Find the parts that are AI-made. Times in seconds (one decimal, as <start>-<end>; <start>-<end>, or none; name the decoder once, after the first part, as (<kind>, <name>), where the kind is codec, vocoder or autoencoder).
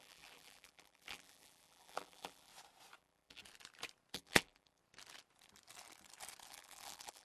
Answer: 0.0-2.5 (vocoder, BigVGAN v2); 3.0-3.4; 4.1-4.8; 6.5-7.2